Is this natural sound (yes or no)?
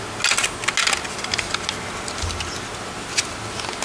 yes